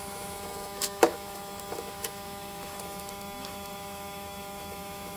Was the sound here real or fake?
fake